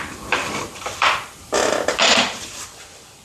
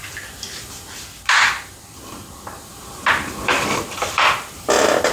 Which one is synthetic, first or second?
first